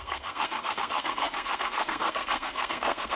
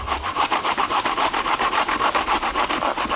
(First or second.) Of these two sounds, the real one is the second